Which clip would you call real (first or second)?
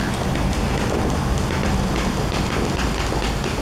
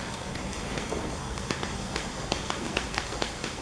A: first